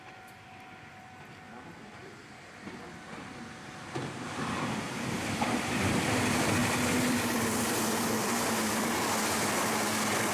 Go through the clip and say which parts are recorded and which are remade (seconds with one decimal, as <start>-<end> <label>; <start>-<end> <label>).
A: 0.0-2.0 recorded; 2.0-6.0 remade; 6.0-6.6 recorded; 6.6-8.9 remade; 8.9-10.3 recorded